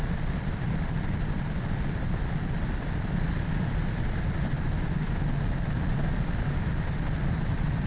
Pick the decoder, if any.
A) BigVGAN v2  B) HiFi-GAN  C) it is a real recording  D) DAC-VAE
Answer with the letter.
C